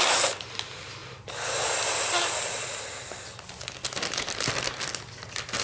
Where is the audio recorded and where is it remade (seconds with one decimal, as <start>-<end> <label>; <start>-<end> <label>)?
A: 0.0-5.6 recorded